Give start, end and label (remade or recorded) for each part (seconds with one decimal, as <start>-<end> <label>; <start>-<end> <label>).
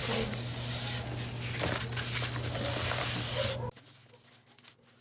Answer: 0.0-5.0 recorded